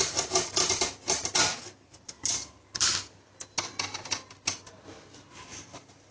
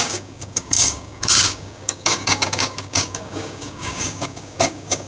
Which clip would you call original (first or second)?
first